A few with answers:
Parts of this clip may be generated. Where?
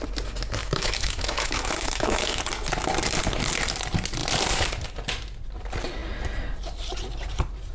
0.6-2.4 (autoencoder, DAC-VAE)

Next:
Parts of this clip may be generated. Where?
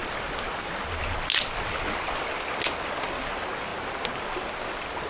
none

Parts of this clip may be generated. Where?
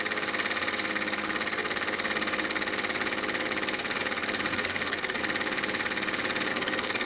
4.5-5.2 (codec, SNAC); 6.5-7.1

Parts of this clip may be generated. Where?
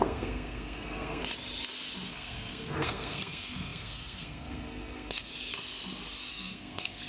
0.0-1.2 (codec, SNAC); 2.1-5.3; 6.3-7.1